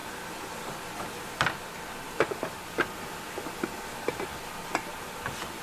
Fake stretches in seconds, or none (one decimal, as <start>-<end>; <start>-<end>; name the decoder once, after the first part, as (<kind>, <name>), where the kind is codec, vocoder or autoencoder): none